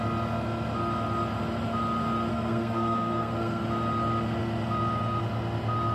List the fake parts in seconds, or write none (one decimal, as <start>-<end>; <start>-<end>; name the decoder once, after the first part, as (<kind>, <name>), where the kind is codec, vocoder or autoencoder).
2.3-3.6 (codec, SNAC)